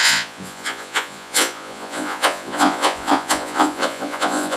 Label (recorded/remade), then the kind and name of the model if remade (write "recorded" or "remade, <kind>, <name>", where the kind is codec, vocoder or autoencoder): remade, vocoder, Vocos